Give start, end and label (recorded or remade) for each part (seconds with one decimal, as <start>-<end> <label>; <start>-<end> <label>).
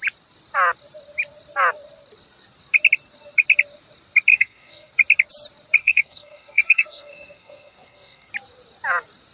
0.0-4.3 recorded; 4.3-4.9 remade; 4.9-5.8 recorded; 5.8-8.3 remade; 8.3-9.3 recorded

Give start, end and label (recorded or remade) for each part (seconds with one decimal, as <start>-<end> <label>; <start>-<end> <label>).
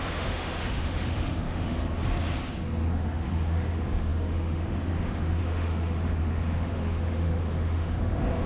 0.0-1.8 remade; 1.8-2.9 recorded; 2.9-8.5 remade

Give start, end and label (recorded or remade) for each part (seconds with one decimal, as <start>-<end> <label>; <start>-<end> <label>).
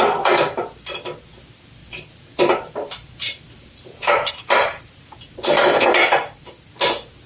0.0-1.8 recorded; 1.8-5.4 remade; 5.4-6.0 recorded; 6.0-6.7 remade; 6.7-7.3 recorded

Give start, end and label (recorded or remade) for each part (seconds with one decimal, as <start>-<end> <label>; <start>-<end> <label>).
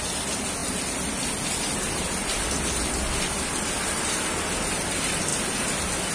0.0-6.1 recorded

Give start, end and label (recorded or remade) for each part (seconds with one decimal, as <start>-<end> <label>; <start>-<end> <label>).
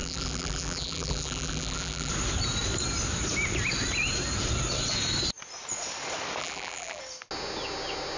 0.0-2.1 remade; 2.1-6.4 recorded; 6.4-7.0 remade; 7.0-8.2 recorded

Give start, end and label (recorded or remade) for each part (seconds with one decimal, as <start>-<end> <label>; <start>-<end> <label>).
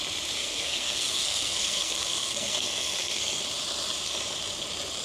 0.0-0.4 recorded; 0.4-3.4 remade; 3.4-5.0 recorded